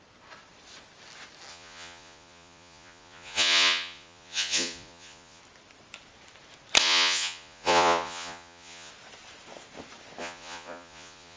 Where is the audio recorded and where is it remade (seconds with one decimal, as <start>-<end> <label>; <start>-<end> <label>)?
0.0-1.5 recorded; 1.5-5.4 remade; 5.4-6.8 recorded; 6.8-8.9 remade; 8.9-10.2 recorded; 10.2-11.4 remade